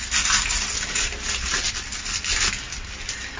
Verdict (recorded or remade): recorded